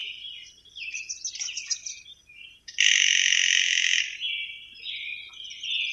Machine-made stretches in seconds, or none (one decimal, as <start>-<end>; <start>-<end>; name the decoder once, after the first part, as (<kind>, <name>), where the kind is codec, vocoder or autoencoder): 0.0-2.9 (vocoder, BigVGAN v2)